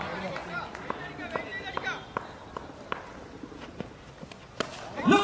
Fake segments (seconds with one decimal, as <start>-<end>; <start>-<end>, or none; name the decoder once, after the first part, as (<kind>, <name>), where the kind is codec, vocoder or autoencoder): none

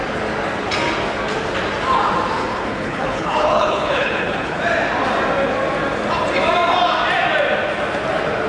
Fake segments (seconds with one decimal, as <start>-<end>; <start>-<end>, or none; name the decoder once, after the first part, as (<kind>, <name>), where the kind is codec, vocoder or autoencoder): 2.5-4.6 (codec, HILCodec)

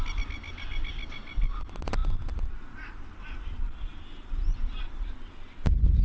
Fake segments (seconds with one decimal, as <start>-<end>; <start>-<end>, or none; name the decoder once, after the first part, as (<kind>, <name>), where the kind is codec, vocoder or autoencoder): none

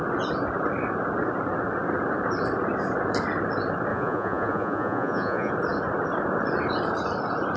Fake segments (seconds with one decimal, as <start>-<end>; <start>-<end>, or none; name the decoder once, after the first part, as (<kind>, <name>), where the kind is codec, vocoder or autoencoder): 3.9-5.5 (vocoder, Vocos)

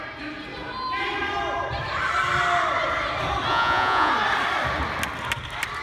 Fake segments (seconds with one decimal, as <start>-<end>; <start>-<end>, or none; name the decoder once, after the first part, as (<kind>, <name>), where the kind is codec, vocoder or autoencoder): 3.5-4.1 (vocoder, Vocos)

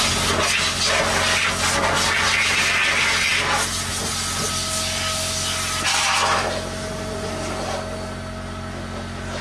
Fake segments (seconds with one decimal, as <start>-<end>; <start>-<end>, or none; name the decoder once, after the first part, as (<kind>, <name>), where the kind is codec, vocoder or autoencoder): none